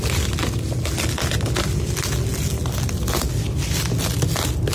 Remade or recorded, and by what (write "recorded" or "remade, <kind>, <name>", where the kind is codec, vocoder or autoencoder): recorded